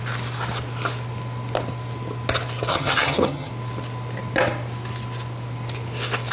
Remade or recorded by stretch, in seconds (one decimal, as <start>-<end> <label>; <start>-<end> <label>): 0.0-2.7 recorded; 2.7-3.5 remade; 3.5-6.3 recorded